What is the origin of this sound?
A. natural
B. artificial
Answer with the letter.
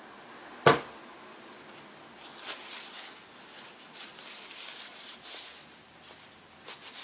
A